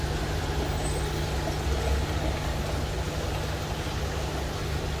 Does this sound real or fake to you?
real